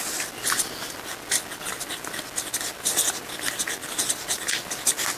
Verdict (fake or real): real